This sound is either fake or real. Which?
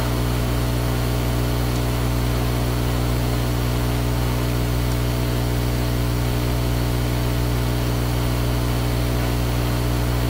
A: real